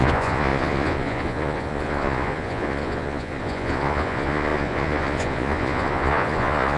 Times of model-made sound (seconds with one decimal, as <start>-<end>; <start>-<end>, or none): 0.0-6.8

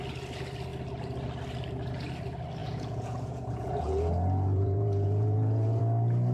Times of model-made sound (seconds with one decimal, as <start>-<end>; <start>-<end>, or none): 2.6-5.8

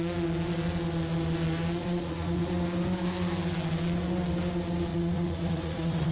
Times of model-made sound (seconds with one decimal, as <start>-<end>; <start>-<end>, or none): 1.8-2.5; 4.9-6.1

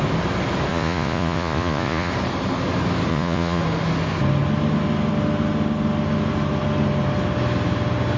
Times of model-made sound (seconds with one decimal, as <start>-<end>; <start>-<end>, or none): 0.7-2.1; 3.1-3.6

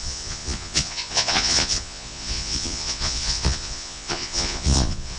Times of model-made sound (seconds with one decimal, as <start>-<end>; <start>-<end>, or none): 0.0-5.2

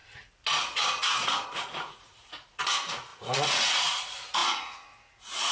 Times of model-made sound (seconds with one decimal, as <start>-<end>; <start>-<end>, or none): 1.0-5.5